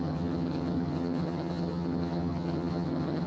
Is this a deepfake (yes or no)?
yes